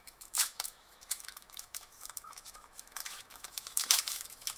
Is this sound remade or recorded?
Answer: remade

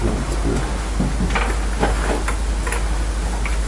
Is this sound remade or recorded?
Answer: recorded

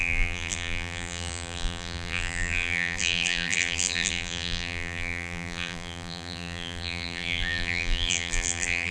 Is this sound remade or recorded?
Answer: remade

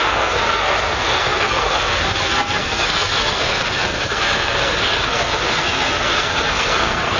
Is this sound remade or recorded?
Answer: remade